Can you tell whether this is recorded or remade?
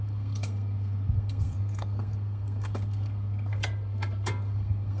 remade